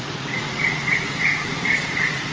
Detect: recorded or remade remade